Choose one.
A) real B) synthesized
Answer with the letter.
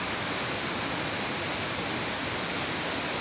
A